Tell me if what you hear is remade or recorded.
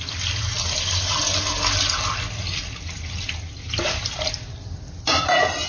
recorded